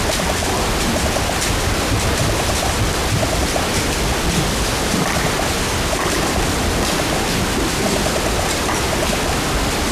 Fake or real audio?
real